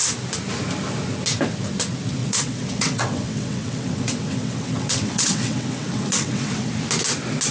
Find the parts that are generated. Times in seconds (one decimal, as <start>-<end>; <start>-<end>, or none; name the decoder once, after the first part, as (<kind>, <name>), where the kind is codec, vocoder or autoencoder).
2.2-6.7 (vocoder, WaveNeXt)